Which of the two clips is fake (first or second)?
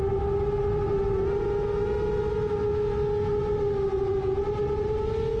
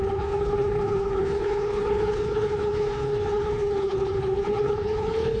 second